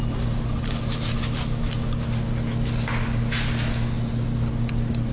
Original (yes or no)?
yes